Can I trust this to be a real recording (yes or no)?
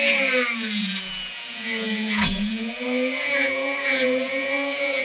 no